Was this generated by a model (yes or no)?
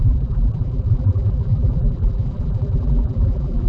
yes